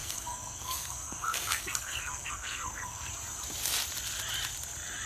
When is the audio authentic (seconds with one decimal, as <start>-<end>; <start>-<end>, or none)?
3.1-5.1